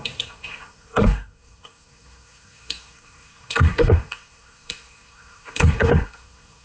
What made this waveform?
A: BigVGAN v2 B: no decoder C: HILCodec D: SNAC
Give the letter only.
D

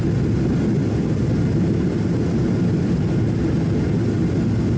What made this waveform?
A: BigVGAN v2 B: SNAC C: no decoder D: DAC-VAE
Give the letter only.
C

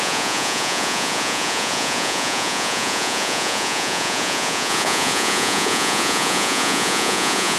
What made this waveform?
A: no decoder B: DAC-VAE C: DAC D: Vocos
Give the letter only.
D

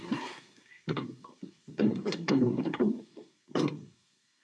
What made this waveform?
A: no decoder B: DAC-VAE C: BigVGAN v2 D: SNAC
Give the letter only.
D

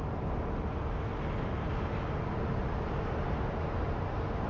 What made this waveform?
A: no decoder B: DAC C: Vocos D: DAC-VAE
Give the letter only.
A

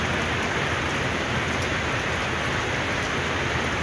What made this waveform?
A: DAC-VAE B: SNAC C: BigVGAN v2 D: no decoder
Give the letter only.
D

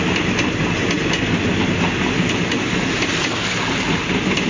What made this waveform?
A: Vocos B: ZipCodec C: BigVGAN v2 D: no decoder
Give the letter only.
D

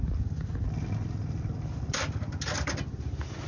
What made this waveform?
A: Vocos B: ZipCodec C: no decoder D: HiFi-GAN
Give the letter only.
C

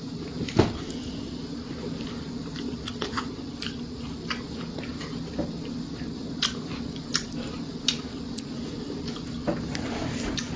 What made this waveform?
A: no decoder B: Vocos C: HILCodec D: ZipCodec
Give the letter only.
A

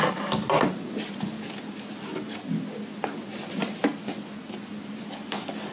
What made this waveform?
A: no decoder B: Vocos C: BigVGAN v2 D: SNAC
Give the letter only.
A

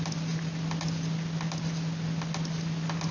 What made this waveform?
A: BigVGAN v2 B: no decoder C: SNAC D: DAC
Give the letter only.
B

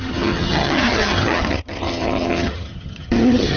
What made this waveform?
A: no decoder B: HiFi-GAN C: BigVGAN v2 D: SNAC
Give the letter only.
B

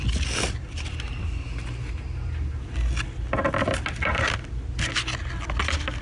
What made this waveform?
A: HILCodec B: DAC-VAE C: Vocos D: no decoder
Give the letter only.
D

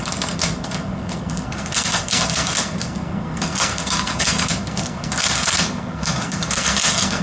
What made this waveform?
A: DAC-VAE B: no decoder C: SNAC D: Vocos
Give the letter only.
C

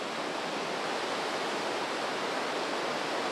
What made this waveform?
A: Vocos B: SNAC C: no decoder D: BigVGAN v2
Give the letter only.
C